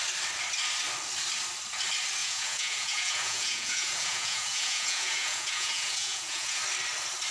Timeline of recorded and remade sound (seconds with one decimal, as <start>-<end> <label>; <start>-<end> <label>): 0.0-2.2 recorded; 2.2-6.6 remade; 6.6-7.3 recorded